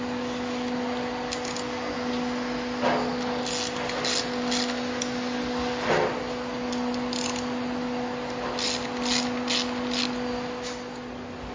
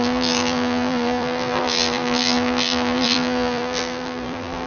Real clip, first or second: first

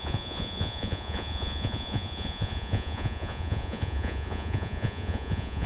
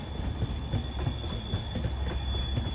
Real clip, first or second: second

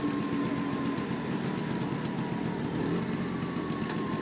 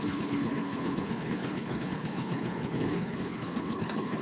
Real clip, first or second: first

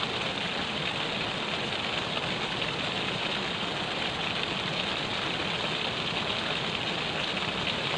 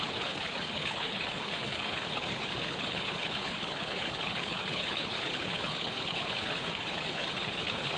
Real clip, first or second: first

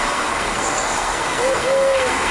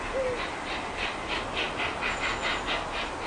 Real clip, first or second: second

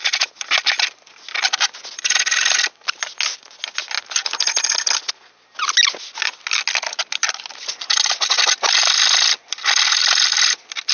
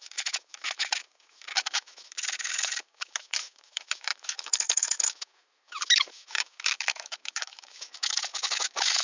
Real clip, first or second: first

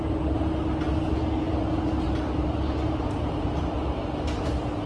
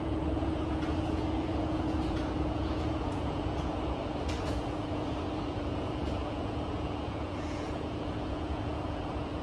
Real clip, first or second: first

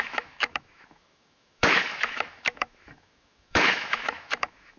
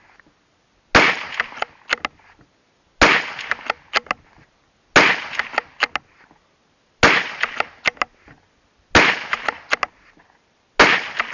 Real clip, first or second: second